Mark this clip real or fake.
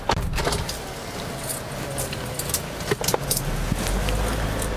real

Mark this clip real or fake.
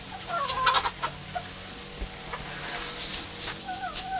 real